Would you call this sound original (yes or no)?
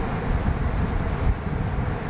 yes